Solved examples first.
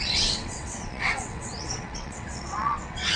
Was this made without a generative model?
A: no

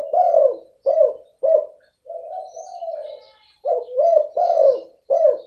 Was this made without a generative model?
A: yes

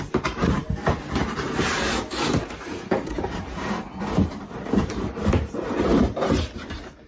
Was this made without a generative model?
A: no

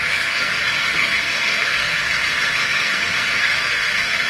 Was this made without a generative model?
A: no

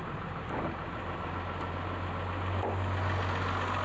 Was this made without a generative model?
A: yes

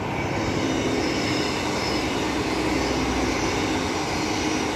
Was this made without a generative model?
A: yes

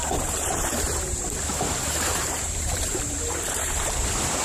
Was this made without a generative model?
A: no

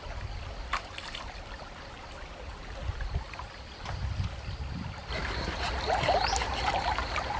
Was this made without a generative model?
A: yes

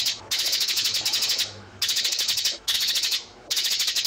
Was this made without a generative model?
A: no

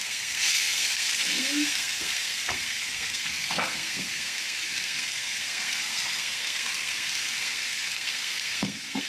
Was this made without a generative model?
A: no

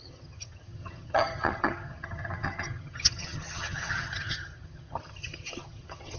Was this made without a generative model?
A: no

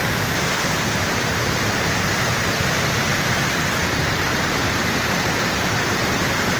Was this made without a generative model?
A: no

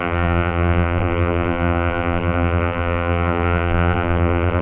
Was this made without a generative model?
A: no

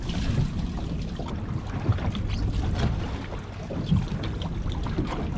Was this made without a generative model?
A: yes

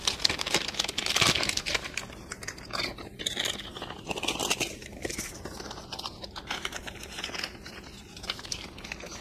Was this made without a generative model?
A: no